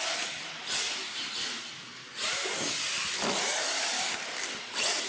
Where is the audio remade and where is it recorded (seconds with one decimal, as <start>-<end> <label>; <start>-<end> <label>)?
0.0-5.1 recorded